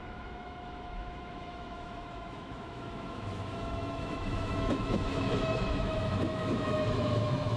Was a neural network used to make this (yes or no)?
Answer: yes